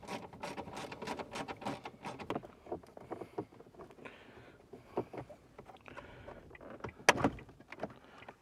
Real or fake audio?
real